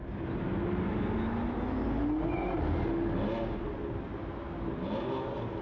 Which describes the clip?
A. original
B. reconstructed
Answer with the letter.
A